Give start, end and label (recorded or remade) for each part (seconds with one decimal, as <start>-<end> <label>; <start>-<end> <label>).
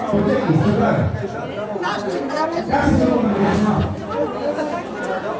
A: 0.0-2.1 recorded; 2.1-2.6 remade; 2.6-3.3 recorded; 3.3-3.8 remade; 3.8-5.4 recorded